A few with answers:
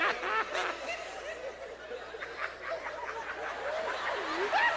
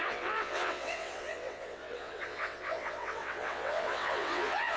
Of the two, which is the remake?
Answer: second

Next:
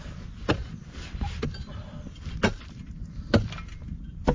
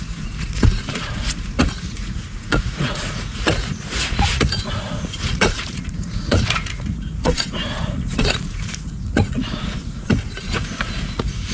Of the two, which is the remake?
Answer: second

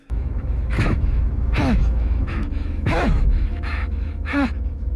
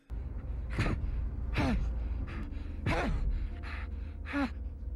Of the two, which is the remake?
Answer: first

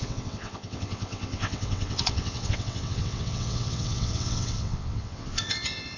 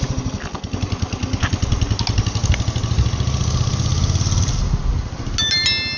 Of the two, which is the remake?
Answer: first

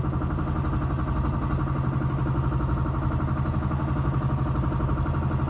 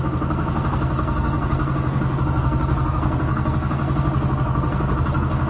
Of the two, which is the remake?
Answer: second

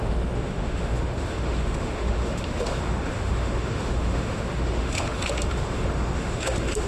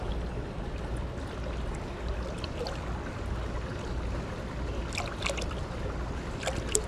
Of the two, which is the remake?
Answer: first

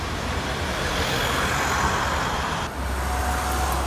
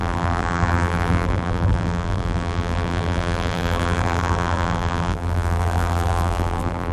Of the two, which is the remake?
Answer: second